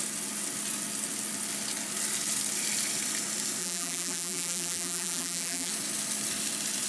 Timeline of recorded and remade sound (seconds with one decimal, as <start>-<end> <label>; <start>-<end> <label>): 0.0-3.6 recorded; 3.6-5.7 remade; 5.7-6.9 recorded